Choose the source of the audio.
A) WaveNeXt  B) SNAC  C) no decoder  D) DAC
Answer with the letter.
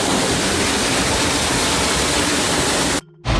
C